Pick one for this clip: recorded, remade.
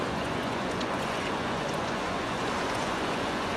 remade